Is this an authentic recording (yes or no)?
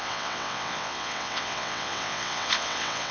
no